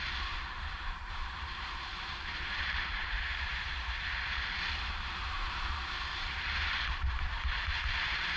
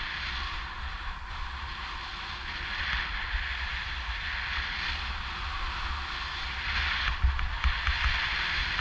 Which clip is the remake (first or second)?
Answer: first